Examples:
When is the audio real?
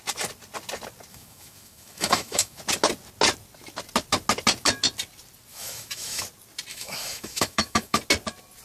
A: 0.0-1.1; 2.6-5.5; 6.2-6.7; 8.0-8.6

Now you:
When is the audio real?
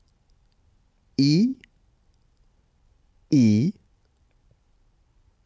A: none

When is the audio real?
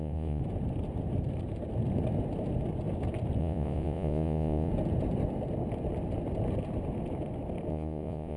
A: 0.4-3.4; 4.7-7.7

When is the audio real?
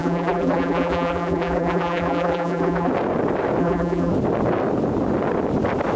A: 2.9-3.6; 4.1-6.0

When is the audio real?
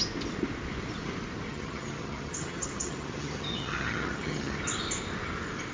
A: 0.0-1.5; 4.6-5.7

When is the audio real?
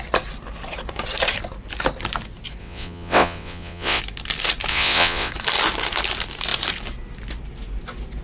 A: 0.0-2.6; 4.0-4.7; 5.3-8.2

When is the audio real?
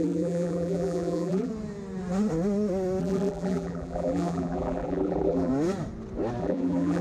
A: 1.5-3.0; 5.5-6.4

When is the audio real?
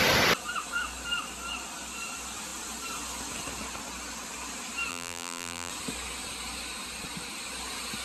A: 0.0-4.9; 5.7-8.0